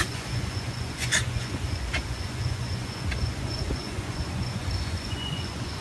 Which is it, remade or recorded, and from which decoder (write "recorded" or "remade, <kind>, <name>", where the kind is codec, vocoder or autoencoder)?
remade, vocoder, Vocos